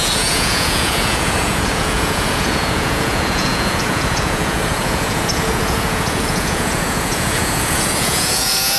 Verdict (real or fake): fake